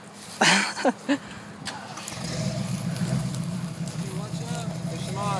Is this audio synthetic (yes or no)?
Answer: no